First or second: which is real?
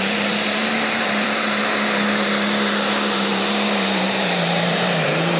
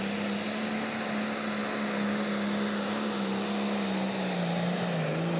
second